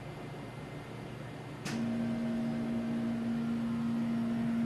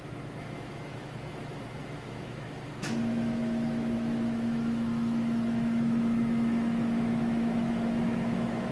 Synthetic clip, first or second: second